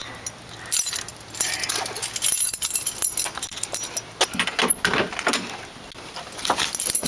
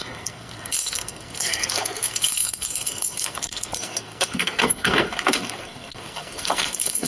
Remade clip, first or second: second